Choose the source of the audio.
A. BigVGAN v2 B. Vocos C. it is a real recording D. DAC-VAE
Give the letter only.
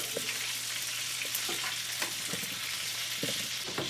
C